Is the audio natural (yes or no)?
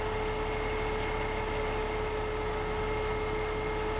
yes